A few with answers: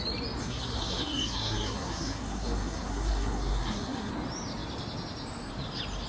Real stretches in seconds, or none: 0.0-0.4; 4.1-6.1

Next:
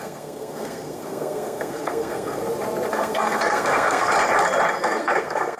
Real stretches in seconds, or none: 2.4-2.9; 4.1-4.8

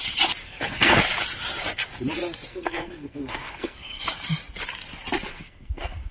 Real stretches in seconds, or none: 0.0-0.4; 1.0-2.5; 4.0-5.3

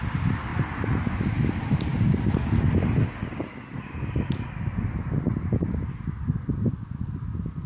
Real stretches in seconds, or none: 0.0-7.7

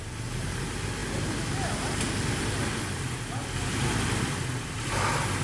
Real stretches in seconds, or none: 0.0-5.4

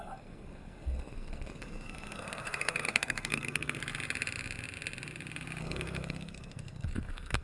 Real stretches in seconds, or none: 3.8-5.6